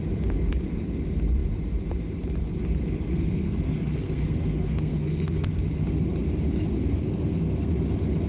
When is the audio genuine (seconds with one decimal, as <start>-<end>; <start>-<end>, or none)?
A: 0.0-3.1; 5.6-7.0; 7.7-8.3